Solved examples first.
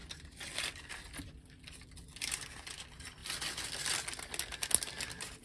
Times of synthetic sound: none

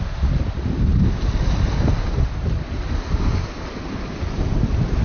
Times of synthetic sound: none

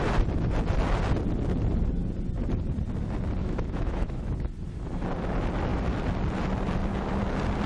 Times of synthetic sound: 3.4-4.3 (autoencoder, DAC-VAE)